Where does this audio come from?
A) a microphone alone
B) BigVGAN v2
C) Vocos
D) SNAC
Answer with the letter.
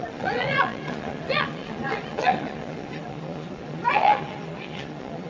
C